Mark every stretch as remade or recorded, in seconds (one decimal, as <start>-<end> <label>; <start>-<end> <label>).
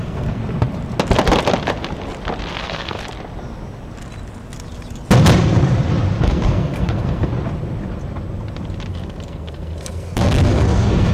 0.0-0.4 remade; 0.4-2.5 recorded; 2.5-3.0 remade; 3.0-6.2 recorded; 6.2-7.3 remade; 7.3-8.9 recorded; 8.9-11.1 remade